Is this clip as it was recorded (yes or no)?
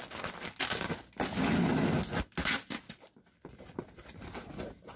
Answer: yes